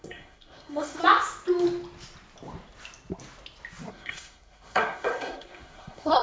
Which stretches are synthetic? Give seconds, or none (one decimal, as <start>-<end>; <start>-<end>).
0.0-1.0; 3.9-6.2